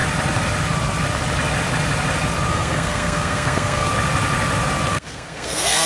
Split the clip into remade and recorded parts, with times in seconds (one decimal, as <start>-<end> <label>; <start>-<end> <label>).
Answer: 0.0-2.5 recorded; 2.5-3.9 remade; 3.9-4.9 recorded; 4.9-5.9 remade